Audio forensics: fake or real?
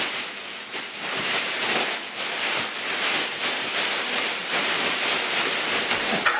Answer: real